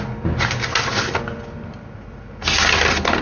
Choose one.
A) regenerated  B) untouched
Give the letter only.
B